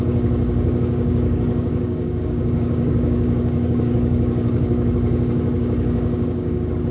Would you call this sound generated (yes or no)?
yes